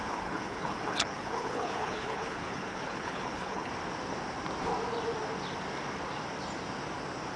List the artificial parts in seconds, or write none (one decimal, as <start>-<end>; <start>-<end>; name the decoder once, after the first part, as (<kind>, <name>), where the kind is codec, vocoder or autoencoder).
0.0-3.7 (codec, HILCodec)